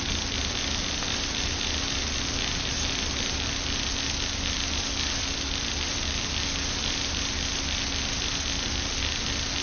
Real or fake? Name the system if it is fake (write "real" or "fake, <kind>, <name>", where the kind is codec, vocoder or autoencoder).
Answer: real